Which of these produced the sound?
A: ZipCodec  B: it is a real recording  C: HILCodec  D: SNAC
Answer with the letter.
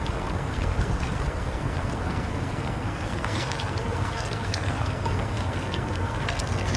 D